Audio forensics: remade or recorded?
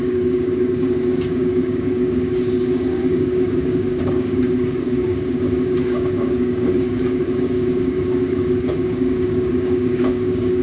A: remade